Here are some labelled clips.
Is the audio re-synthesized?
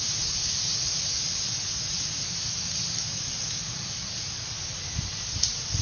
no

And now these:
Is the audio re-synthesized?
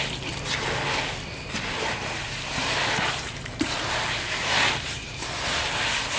no